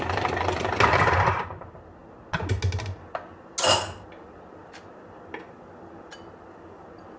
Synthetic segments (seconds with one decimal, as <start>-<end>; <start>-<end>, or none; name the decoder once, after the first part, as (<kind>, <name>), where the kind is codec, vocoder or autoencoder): none